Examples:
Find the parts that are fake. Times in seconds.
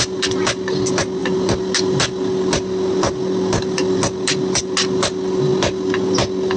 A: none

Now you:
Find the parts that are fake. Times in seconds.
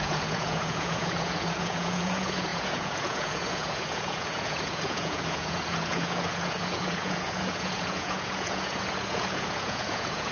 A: 0.0-10.3 (vocoder, Vocos)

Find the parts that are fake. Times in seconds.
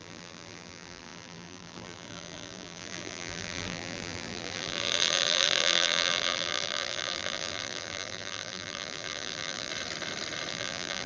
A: 0.0-9.7 (vocoder, BigVGAN v2); 10.5-11.1